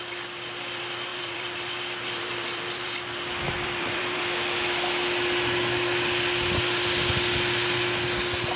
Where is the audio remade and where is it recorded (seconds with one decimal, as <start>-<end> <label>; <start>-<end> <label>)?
0.0-1.1 recorded; 1.1-4.2 remade; 4.2-8.6 recorded